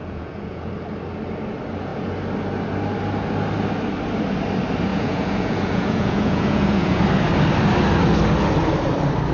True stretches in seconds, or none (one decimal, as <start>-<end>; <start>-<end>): 0.7-4.9; 7.0-9.3